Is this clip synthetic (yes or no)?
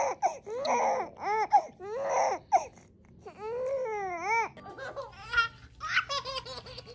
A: no